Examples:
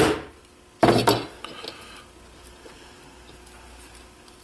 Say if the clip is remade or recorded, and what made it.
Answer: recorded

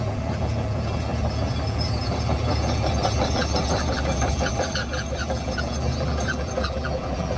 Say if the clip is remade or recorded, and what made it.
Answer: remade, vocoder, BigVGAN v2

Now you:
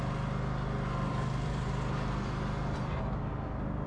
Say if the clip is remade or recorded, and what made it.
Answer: recorded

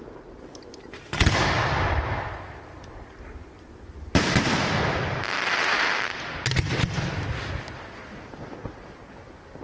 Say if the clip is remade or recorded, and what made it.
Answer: recorded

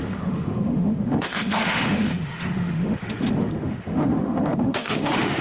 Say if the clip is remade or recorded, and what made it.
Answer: remade, autoencoder, DAC-VAE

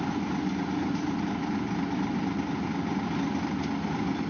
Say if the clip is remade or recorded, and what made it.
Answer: recorded